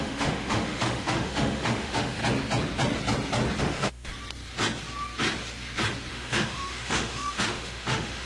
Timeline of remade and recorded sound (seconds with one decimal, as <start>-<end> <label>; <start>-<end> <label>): 0.0-2.2 remade; 2.2-3.6 recorded; 3.6-4.1 remade; 4.1-6.1 recorded; 6.1-8.3 remade